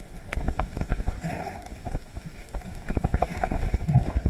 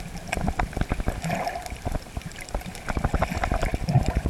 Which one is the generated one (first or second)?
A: first